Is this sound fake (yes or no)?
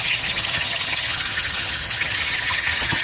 yes